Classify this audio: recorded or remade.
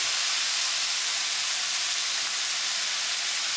recorded